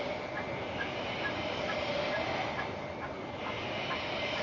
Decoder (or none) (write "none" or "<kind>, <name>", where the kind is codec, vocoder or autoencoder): none